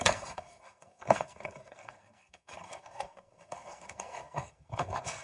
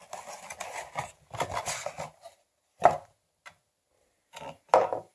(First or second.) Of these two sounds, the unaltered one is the second